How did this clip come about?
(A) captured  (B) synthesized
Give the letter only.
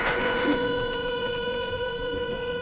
B